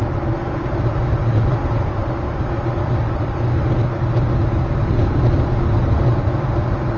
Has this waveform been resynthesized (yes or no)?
no